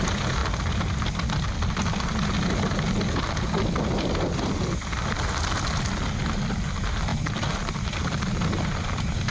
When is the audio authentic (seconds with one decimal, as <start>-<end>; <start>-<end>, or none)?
0.0-9.3